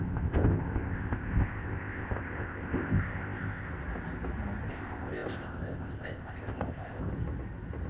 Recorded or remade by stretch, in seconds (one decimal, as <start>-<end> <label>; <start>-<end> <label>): 0.0-3.7 remade; 3.7-4.7 recorded; 4.7-7.1 remade; 7.1-7.9 recorded